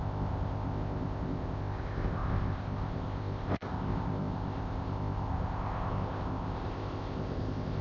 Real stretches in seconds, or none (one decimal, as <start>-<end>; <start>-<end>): none